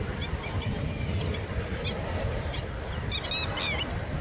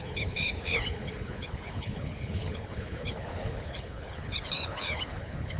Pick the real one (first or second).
first